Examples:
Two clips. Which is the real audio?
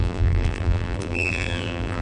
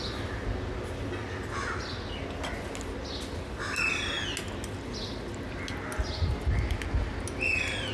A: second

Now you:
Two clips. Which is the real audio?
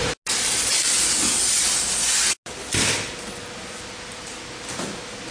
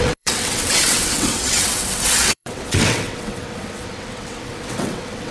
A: first